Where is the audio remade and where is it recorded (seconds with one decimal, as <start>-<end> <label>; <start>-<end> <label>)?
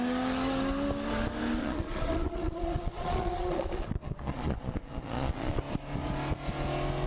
0.0-1.6 recorded; 1.6-5.6 remade; 5.6-7.1 recorded